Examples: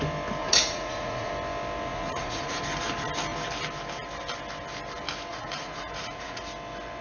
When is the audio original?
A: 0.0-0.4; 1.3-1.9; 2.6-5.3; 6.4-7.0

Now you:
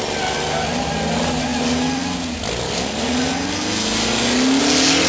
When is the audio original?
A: 0.0-5.1

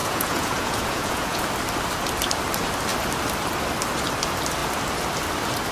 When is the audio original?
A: 1.4-5.7

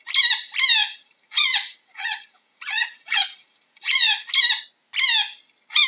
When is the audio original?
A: 0.0-0.8; 4.3-5.9

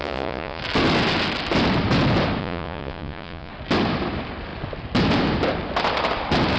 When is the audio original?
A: 0.6-2.4; 3.5-6.6

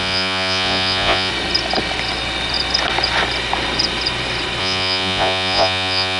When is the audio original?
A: 1.3-4.6

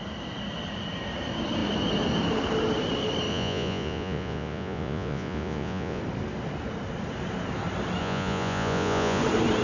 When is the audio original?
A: 0.0-3.3; 6.0-8.0; 9.2-9.6